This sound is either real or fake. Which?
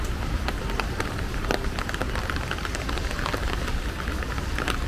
real